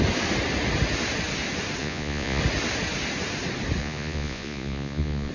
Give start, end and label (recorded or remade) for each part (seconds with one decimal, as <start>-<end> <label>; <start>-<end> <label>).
0.0-1.8 recorded; 1.8-2.4 remade; 2.4-3.8 recorded; 3.8-5.3 remade